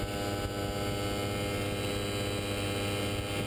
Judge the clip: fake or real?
real